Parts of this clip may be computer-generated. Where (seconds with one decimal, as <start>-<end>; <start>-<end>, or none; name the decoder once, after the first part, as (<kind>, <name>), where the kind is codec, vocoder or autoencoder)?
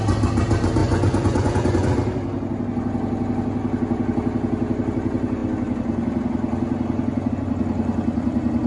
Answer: 0.8-1.9 (vocoder, Vocos)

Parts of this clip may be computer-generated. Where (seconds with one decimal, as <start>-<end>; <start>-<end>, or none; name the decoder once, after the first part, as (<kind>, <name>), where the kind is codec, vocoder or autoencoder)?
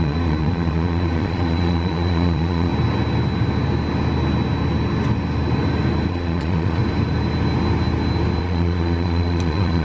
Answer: 0.0-2.7 (vocoder, Vocos); 6.1-6.8; 8.4-9.8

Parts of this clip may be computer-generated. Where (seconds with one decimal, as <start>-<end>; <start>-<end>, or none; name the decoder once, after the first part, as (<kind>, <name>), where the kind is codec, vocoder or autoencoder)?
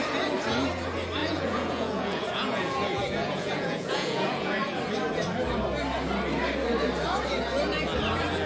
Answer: 1.2-4.6 (vocoder, Vocos)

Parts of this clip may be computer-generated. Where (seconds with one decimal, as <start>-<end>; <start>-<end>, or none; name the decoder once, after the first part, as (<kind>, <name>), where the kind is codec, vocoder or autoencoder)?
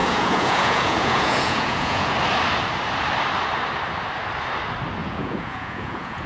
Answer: 0.0-2.1 (vocoder, Vocos); 5.0-6.3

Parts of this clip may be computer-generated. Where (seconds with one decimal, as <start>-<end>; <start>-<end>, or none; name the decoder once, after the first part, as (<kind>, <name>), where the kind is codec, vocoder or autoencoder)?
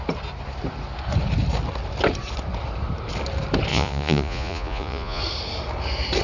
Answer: 3.7-5.2 (vocoder, Vocos)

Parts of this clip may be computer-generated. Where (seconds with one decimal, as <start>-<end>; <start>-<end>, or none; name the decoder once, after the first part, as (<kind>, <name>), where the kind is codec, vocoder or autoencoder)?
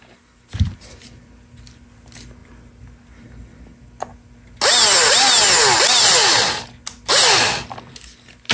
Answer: none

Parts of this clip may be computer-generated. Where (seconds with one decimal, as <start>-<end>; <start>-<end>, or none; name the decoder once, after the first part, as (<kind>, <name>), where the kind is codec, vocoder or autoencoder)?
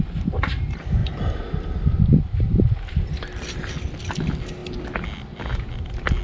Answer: none